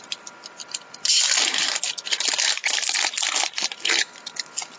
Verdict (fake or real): real